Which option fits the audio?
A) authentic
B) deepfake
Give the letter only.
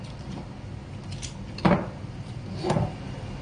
A